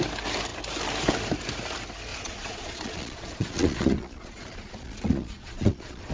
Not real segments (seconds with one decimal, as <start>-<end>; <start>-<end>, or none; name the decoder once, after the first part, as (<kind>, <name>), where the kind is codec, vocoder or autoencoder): 2.1-6.1 (vocoder, Vocos)